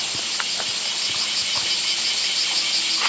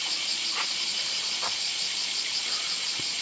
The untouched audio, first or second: first